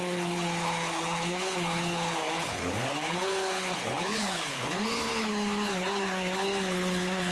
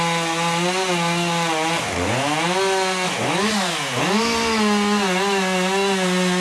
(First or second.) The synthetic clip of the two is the first